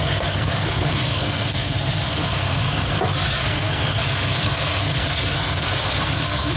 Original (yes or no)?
no